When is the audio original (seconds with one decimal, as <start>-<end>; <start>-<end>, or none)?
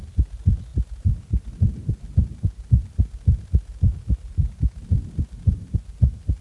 0.0-6.4